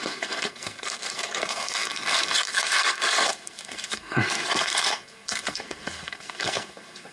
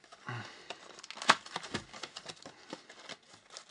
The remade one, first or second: first